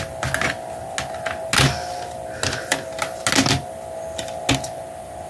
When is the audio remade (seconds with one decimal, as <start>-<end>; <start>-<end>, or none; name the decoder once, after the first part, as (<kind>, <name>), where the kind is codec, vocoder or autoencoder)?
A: none